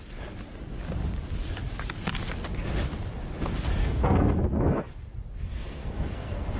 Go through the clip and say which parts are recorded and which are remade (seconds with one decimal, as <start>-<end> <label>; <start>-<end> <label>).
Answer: 0.0-3.8 recorded; 3.8-4.9 remade; 4.9-5.4 recorded; 5.4-6.6 remade